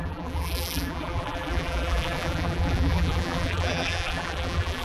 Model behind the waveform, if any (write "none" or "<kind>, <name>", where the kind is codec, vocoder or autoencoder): vocoder, BigVGAN v2